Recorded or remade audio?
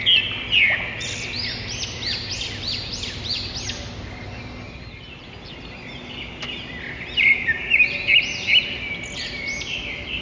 recorded